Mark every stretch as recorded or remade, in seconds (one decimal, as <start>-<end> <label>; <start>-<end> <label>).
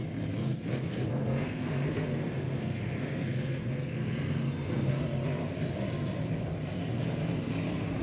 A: 0.0-0.4 recorded; 0.4-4.9 remade; 4.9-8.0 recorded